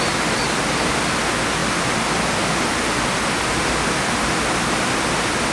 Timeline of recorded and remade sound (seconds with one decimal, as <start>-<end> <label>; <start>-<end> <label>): 0.0-5.5 recorded